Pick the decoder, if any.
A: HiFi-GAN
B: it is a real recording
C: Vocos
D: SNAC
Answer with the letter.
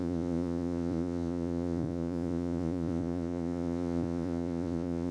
C